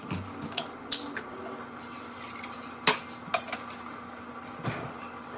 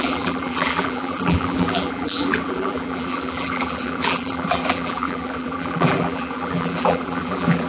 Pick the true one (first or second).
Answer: first